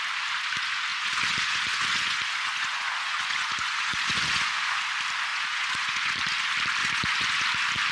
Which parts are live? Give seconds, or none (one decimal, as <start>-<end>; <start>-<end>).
0.0-0.9; 4.8-5.3; 6.1-6.8; 7.4-7.9